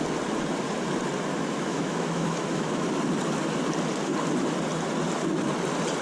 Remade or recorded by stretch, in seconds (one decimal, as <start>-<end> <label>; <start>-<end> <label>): 0.0-1.3 recorded; 1.3-2.9 remade; 2.9-6.0 recorded

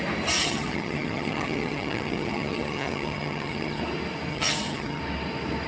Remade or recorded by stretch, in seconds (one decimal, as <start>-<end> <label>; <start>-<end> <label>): 0.0-0.4 recorded; 0.4-3.8 remade; 3.8-4.3 recorded; 4.3-5.0 remade; 5.0-5.7 recorded